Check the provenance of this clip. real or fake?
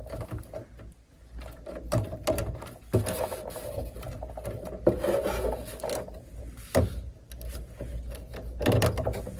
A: real